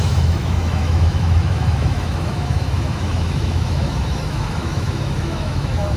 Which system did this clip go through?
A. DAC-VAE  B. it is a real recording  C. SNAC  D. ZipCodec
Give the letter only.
A